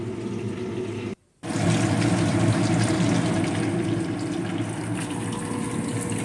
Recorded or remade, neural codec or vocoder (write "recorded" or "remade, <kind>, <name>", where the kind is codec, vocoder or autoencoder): recorded